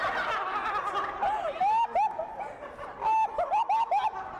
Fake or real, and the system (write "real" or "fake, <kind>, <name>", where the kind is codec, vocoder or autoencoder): real